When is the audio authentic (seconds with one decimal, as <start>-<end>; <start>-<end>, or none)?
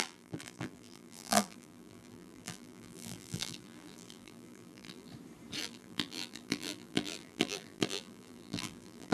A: 5.1-5.6